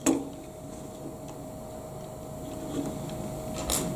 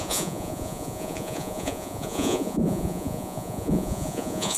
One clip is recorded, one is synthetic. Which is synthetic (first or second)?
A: second